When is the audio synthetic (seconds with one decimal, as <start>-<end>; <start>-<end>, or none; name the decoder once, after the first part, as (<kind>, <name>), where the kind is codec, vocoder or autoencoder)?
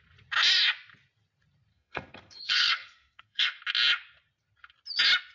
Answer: 1.7-3.6 (codec, SNAC)